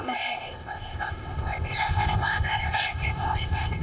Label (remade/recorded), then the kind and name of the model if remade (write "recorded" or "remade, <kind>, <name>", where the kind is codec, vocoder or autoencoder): remade, codec, ZipCodec